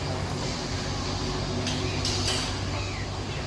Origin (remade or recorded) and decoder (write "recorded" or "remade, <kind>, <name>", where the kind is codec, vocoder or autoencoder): recorded